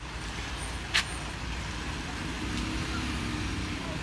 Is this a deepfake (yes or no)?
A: no